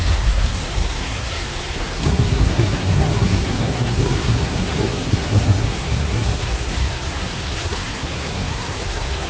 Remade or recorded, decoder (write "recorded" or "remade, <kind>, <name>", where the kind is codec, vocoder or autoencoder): remade, codec, SNAC